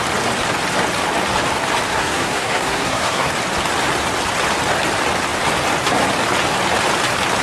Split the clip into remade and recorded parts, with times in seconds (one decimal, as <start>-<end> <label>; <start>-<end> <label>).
0.0-1.9 recorded; 1.9-3.3 remade; 3.3-7.4 recorded